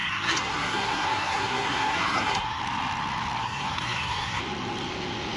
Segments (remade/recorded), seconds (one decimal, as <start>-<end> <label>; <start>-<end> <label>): 0.0-2.6 remade; 2.6-3.4 recorded; 3.4-4.4 remade; 4.4-5.4 recorded